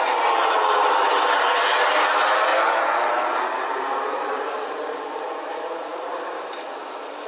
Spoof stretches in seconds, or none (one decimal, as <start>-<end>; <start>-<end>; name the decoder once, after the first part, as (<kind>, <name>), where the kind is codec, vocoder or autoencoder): none